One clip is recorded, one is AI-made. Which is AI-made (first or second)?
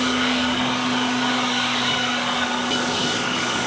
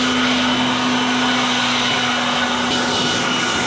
first